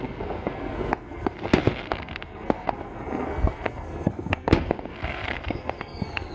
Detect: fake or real fake